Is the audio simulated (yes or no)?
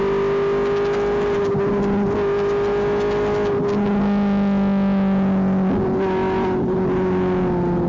no